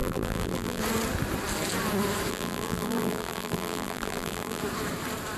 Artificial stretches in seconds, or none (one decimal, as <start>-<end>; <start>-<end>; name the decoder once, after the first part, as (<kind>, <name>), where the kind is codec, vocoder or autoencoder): 0.0-0.8 (vocoder, BigVGAN v2); 2.3-4.6